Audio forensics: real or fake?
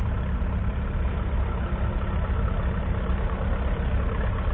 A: real